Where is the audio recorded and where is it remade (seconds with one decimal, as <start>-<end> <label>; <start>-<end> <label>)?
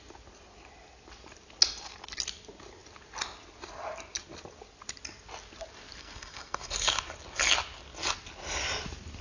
0.0-6.0 recorded; 6.0-6.7 remade; 6.7-9.2 recorded